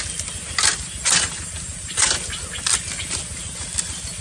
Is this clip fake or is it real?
real